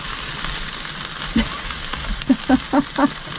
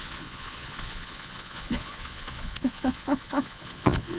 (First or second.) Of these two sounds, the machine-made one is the second